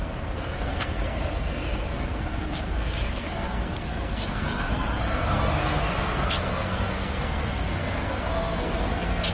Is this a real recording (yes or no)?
no